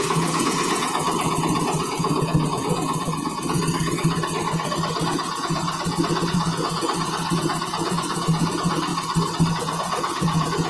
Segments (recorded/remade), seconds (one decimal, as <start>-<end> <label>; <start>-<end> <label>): 0.0-3.6 remade; 3.6-5.0 recorded; 5.0-8.9 remade; 8.9-9.5 recorded; 9.5-10.7 remade